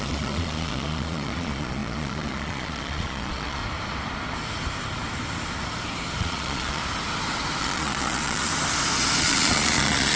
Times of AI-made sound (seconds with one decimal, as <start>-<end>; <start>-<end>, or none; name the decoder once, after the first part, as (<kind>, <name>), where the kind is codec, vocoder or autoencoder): 0.0-3.6 (vocoder, Vocos); 6.2-6.8; 7.6-8.5; 9.2-10.2